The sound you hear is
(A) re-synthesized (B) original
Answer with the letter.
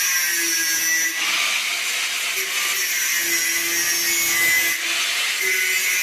B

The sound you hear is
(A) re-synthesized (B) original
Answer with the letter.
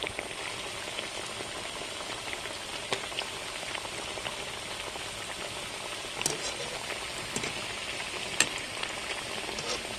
B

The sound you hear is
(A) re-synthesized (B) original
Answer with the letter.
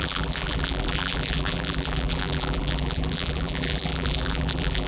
A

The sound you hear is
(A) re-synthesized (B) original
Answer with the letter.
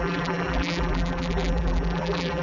A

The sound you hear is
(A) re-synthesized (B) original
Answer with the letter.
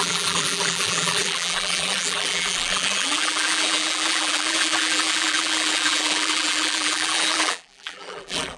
A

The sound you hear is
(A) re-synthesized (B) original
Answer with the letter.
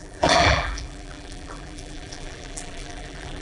A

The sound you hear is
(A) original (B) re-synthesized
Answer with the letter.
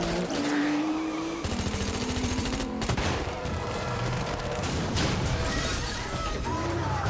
B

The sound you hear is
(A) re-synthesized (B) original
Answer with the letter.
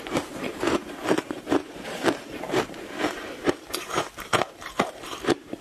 A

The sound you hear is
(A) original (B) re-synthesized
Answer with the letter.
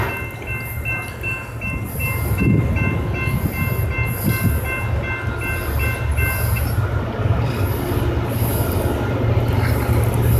A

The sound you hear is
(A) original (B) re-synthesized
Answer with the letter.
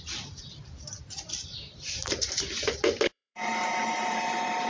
B